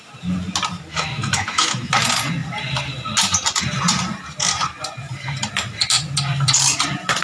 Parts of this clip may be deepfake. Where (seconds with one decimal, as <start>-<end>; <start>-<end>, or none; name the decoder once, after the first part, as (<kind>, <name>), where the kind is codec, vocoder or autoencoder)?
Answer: 0.9-1.9 (autoencoder, DAC-VAE)